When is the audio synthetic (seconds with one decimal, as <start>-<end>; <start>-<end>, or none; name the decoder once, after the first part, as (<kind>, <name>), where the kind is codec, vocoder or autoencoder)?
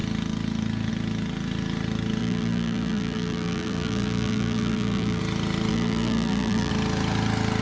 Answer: 2.2-5.2 (vocoder, BigVGAN v2); 5.7-6.7